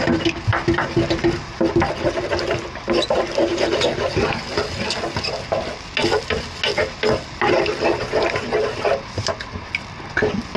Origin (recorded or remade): recorded